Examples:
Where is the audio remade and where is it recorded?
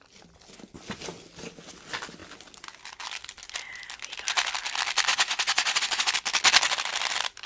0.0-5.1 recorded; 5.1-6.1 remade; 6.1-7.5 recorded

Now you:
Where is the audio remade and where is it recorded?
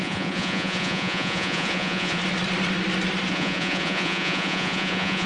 0.0-2.2 remade; 2.2-3.3 recorded; 3.3-5.3 remade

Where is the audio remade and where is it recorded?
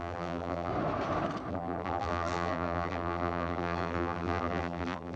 0.0-0.7 remade; 0.7-1.5 recorded; 1.5-5.2 remade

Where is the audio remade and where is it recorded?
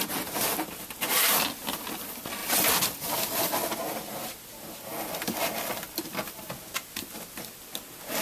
0.0-2.4 recorded; 2.4-3.4 remade; 3.4-4.9 recorded; 4.9-6.5 remade; 6.5-8.2 recorded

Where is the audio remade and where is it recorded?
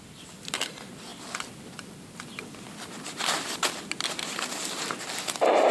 0.0-1.1 recorded; 1.1-3.8 remade; 3.8-5.7 recorded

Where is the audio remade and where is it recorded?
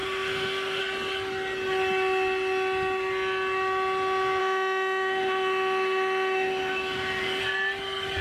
0.0-0.8 remade; 0.8-4.4 recorded; 4.4-7.4 remade; 7.4-8.2 recorded